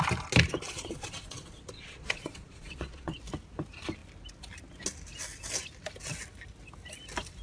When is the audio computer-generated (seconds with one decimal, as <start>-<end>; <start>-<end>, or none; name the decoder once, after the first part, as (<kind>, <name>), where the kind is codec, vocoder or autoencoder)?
0.7-3.2 (vocoder, Vocos)